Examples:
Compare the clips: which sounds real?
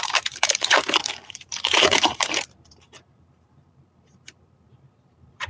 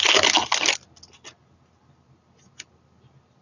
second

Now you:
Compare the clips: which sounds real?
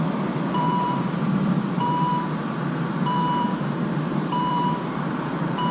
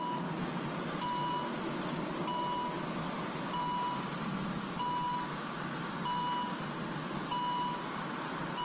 second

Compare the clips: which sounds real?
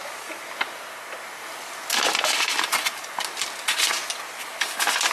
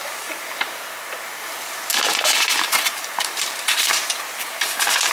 first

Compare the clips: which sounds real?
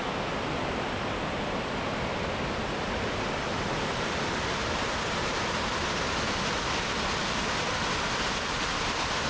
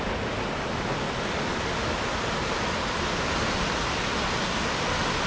second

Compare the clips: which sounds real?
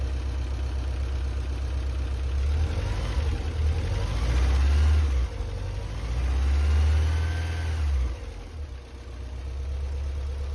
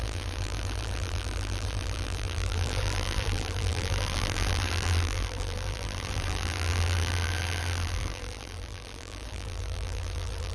first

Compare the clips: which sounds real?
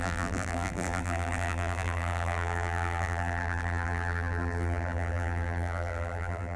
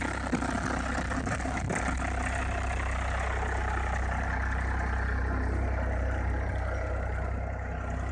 second